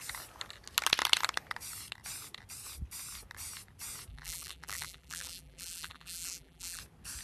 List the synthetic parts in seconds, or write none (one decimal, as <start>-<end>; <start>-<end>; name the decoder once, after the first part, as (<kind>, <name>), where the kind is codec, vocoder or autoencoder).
4.1-6.8 (vocoder, BigVGAN v2)